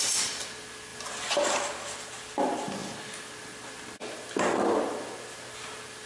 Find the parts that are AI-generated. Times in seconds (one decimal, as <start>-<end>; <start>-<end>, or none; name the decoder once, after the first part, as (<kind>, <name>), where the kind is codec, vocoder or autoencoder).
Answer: 0.9-1.4 (vocoder, BigVGAN v2)